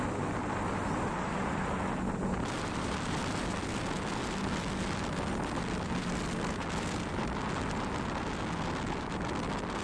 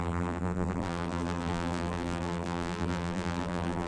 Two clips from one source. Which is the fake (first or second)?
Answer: second